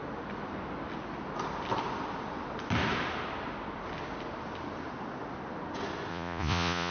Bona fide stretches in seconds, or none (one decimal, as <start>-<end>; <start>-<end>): 0.0-6.1